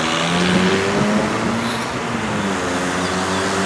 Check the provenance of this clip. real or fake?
real